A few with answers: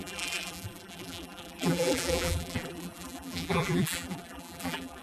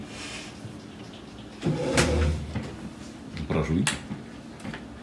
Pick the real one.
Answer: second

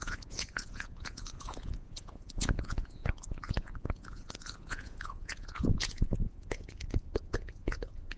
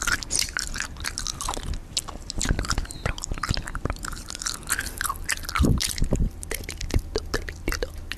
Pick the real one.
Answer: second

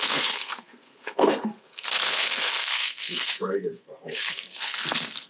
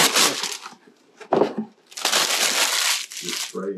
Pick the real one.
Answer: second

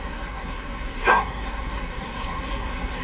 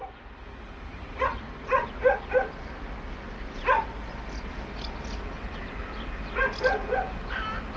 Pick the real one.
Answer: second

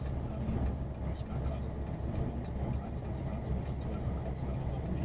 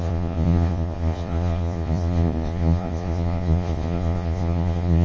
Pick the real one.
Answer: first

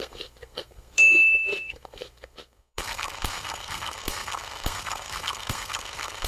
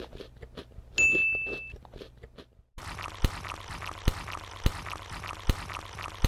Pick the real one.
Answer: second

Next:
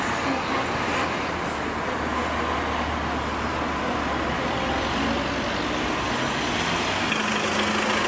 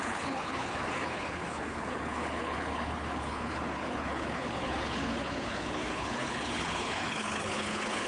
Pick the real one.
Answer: first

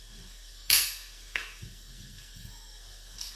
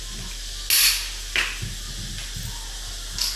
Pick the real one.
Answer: second